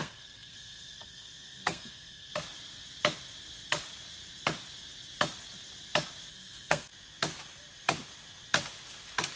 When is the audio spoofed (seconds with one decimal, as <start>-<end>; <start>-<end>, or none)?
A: 0.0-2.3; 6.3-6.9